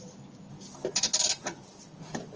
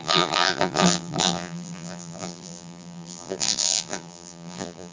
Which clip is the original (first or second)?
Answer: first